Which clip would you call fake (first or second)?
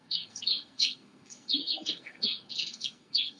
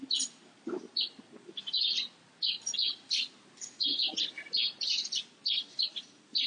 first